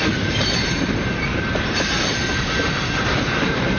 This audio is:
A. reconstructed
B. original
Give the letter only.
A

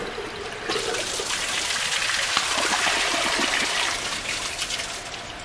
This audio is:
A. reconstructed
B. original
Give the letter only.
B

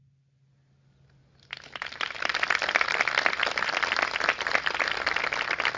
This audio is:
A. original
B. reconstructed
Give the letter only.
A